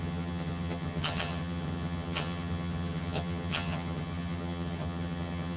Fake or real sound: fake